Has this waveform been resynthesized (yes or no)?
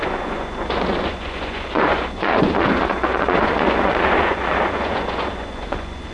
yes